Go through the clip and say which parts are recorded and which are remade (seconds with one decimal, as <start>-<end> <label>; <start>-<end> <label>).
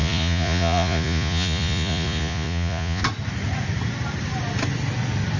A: 0.0-3.0 remade; 3.0-5.4 recorded